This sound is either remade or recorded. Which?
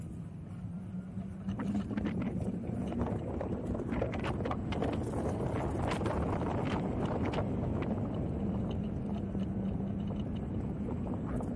recorded